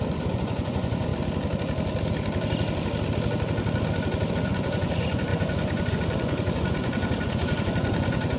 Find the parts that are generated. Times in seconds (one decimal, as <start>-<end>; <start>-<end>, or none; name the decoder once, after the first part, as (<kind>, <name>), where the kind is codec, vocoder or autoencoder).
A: 0.0-1.1 (vocoder, Vocos); 4.3-8.4